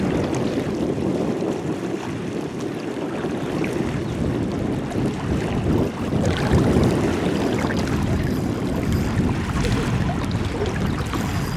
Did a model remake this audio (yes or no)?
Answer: no